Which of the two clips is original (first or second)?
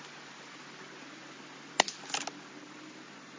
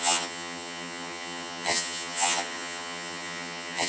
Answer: first